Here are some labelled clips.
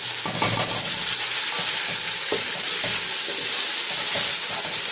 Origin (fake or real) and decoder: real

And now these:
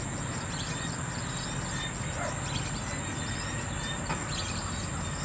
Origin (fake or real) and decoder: real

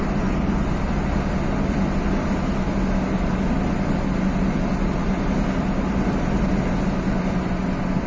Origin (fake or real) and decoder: real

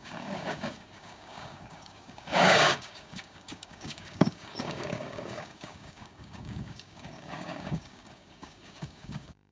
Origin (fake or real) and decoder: fake, codec, DAC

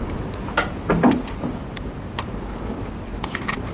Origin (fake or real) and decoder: real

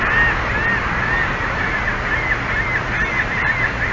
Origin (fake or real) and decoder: real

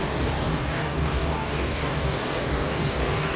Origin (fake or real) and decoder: fake, codec, DAC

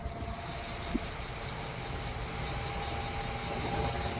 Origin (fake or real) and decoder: real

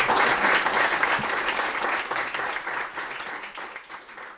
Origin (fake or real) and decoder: real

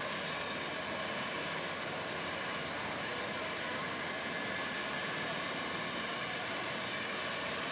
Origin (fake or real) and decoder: real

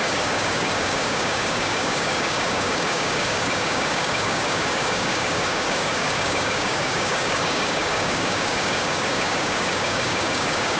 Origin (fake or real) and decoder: fake, codec, DAC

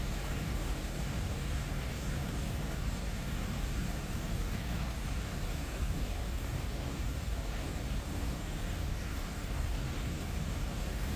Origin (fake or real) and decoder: fake, codec, DAC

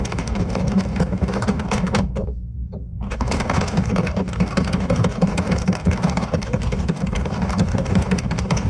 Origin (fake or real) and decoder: fake, codec, DAC